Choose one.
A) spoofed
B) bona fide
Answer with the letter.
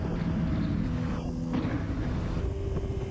B